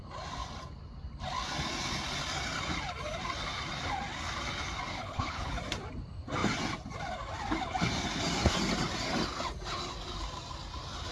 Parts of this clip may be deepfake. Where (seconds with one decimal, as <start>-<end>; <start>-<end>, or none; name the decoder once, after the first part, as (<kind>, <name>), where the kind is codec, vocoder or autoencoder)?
4.9-5.5 (codec, HILCodec)